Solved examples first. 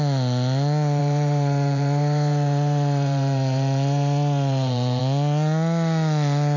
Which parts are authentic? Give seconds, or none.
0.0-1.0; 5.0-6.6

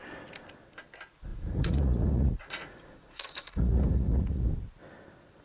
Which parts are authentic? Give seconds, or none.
0.0-1.3; 4.5-5.4

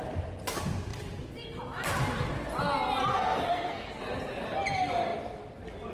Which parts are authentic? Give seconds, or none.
0.0-3.1; 3.9-5.9

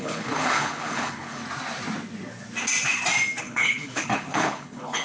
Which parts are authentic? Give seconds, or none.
1.4-3.4

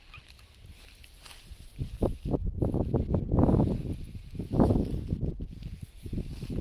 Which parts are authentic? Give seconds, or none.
0.0-6.6

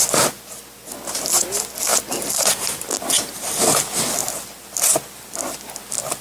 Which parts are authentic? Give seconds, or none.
0.0-6.2